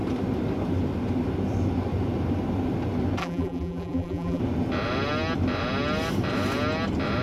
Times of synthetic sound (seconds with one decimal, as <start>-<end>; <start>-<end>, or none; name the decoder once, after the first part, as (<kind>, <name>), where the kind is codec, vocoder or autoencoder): 3.2-4.4 (vocoder, BigVGAN v2)